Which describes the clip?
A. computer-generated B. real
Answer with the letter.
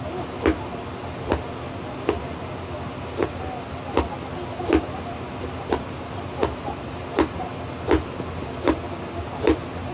B